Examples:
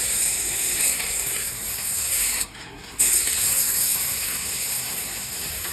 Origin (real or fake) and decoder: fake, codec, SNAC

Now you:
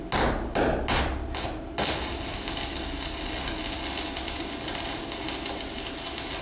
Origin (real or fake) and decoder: real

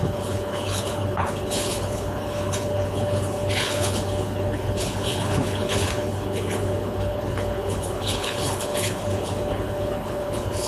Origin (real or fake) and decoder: fake, codec, HILCodec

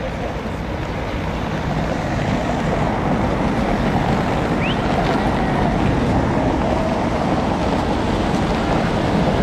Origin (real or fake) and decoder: real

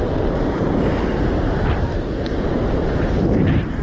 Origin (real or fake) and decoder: fake, vocoder, BigVGAN v2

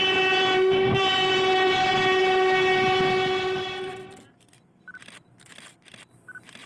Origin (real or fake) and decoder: real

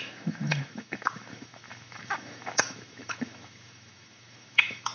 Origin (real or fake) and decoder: fake, autoencoder, DAC-VAE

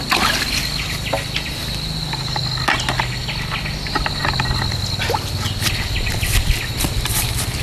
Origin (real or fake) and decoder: real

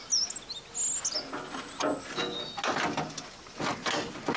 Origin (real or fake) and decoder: real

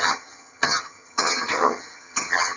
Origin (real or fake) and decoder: fake, vocoder, HiFi-GAN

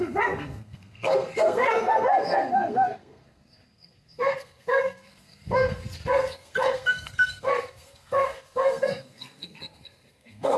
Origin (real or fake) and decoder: fake, codec, SNAC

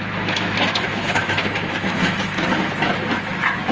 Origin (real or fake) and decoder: fake, autoencoder, DAC-VAE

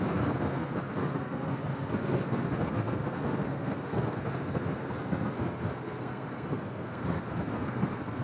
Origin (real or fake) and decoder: fake, codec, SNAC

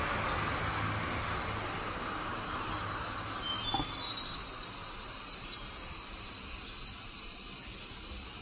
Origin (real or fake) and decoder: real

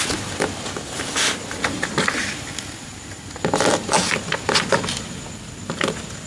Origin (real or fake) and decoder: real